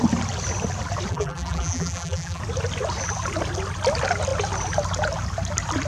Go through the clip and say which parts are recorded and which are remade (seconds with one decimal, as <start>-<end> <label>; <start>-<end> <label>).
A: 0.0-1.1 recorded; 1.1-2.4 remade; 2.4-5.9 recorded